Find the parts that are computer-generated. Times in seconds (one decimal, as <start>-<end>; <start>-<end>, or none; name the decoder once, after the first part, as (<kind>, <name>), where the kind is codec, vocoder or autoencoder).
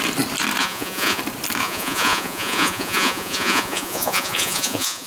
0.6-1.2 (vocoder, Vocos); 1.6-5.1